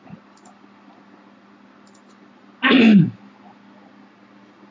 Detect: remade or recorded recorded